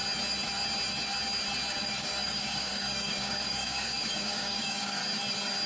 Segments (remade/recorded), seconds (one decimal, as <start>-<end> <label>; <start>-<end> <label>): 0.0-1.7 recorded; 1.7-5.0 remade; 5.0-5.7 recorded

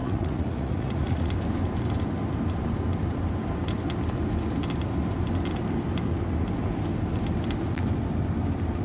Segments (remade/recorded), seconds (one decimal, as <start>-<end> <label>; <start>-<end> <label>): 0.0-1.3 remade; 1.3-8.8 recorded

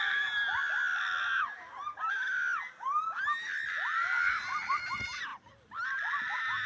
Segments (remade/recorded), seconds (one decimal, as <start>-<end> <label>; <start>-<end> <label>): 0.0-6.7 recorded